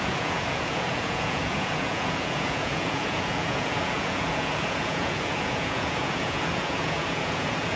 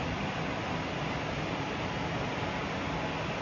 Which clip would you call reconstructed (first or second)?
first